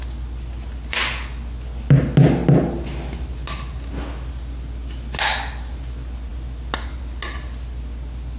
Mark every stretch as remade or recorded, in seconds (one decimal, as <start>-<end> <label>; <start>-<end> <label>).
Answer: 0.0-8.4 recorded